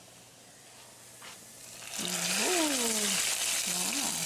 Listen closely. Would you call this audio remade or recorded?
recorded